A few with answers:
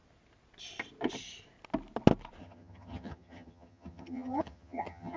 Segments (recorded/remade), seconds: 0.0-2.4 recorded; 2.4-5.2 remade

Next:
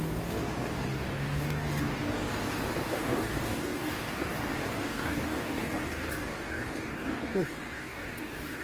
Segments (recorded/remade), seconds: 0.0-2.3 remade; 2.3-2.9 recorded; 2.9-8.6 remade

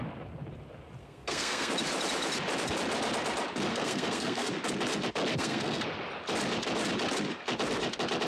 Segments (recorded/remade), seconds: 0.0-1.0 recorded; 1.0-1.7 remade; 1.7-3.7 recorded; 3.7-4.5 remade; 4.5-5.3 recorded; 5.3-5.8 remade; 5.8-8.3 recorded

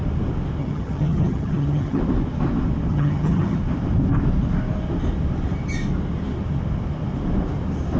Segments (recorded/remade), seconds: 0.0-0.6 recorded; 0.6-2.0 remade; 2.0-2.9 recorded; 2.9-3.6 remade; 3.6-8.0 recorded